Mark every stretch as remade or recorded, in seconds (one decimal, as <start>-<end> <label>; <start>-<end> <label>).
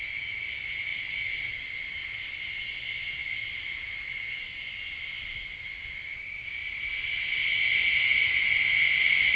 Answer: 0.0-9.4 recorded